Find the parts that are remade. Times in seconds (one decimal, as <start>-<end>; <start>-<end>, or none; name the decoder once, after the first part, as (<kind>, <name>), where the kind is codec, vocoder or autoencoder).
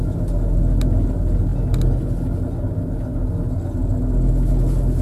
none